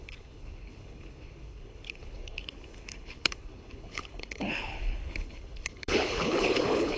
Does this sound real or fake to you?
fake